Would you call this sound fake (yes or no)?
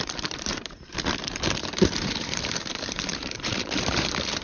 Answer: yes